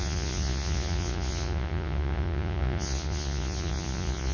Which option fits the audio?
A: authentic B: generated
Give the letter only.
B